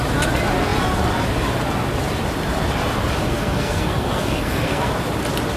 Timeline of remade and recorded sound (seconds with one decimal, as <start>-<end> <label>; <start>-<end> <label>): 0.0-3.2 recorded; 3.2-4.9 remade; 4.9-5.6 recorded

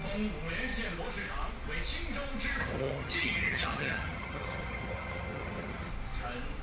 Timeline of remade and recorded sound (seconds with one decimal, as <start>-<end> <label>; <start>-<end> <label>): 0.0-2.6 recorded; 2.6-5.9 remade; 5.9-6.6 recorded

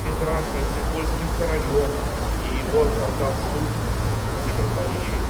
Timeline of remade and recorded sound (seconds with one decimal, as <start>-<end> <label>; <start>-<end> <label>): 0.0-0.8 remade; 0.8-4.0 recorded; 4.0-5.3 remade

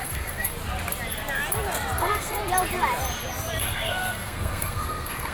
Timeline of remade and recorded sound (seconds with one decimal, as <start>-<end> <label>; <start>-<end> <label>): 0.0-0.5 remade; 0.5-2.0 recorded; 2.0-2.4 remade; 2.4-3.6 recorded; 3.6-5.3 remade

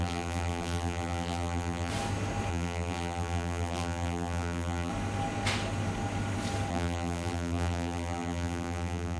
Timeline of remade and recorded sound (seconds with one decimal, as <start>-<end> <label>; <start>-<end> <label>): 0.0-1.9 remade; 1.9-2.5 recorded; 2.5-4.9 remade; 4.9-6.7 recorded; 6.7-9.2 remade

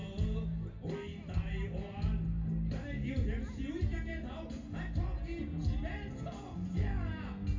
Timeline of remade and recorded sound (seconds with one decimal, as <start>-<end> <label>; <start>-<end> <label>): 0.0-7.6 recorded

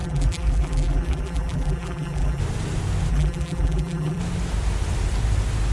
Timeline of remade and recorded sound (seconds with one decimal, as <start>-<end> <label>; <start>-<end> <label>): 0.0-2.4 remade; 2.4-3.1 recorded; 3.1-4.2 remade; 4.2-5.7 recorded

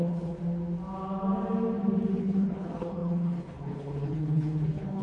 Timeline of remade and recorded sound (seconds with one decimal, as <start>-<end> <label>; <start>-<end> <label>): 0.0-0.4 remade; 0.4-2.2 recorded; 2.2-5.0 remade